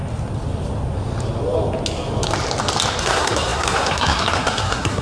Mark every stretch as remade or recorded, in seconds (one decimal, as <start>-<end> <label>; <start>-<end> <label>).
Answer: 0.0-3.0 recorded; 3.0-5.0 remade